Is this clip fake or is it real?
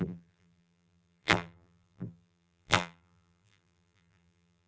fake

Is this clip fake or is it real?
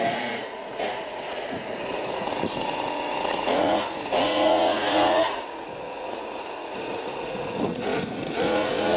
fake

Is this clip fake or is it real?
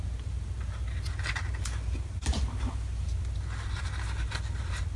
real